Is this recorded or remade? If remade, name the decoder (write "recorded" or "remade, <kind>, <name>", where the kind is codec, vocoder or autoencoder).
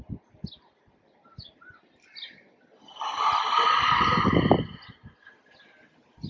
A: recorded